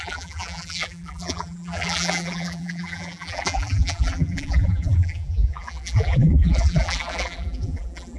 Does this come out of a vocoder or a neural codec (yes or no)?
yes